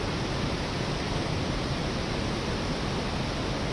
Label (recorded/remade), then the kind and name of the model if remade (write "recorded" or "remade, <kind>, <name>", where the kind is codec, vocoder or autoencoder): recorded